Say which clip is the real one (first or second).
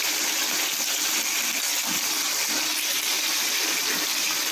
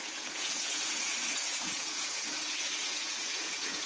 first